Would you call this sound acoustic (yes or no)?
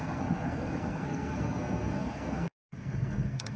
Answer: no